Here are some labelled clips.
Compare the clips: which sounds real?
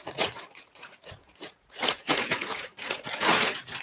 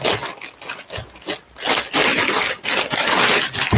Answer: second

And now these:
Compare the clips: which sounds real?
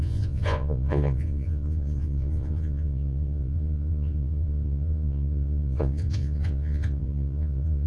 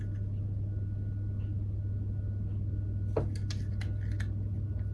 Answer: second